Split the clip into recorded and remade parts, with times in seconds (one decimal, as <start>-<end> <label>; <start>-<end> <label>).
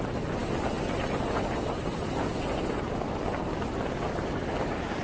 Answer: 0.0-5.0 recorded